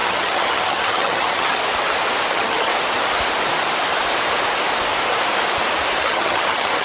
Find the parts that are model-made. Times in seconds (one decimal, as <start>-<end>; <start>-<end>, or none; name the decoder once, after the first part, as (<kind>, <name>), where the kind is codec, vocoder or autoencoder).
0.0-1.6 (vocoder, HiFi-GAN); 2.3-2.7; 6.0-6.8